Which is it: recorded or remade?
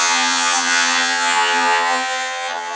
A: remade